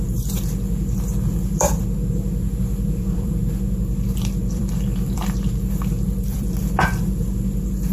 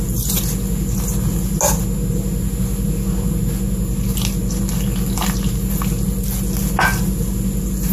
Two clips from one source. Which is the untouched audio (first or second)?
second